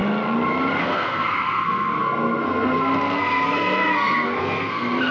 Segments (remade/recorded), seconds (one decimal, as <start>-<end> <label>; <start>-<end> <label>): 0.0-0.8 recorded; 0.8-5.1 remade